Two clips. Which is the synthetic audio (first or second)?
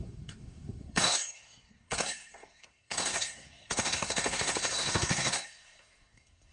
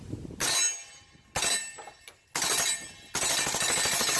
first